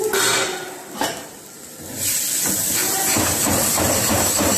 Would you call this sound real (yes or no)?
yes